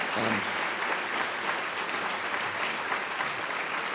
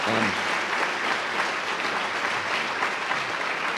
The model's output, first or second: first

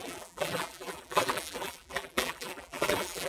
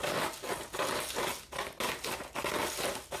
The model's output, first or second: first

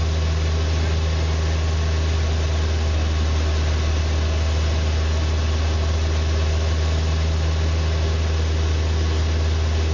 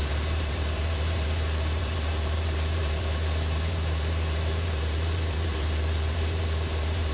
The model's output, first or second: second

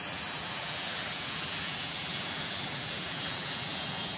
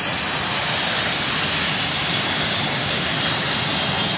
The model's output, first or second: first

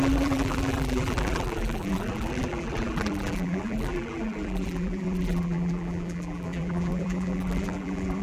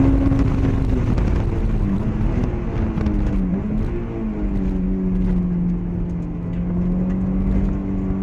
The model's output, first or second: first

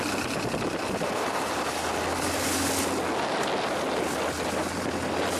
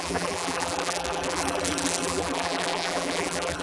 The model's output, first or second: second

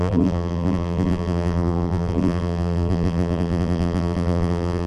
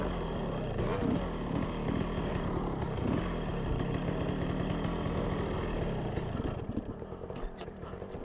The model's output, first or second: first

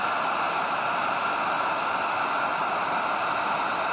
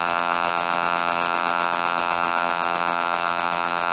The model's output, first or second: second